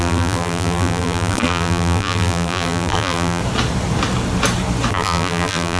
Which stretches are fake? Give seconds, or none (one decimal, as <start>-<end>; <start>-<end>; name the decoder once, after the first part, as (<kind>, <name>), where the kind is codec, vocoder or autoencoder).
0.0-3.4 (vocoder, BigVGAN v2); 4.9-5.8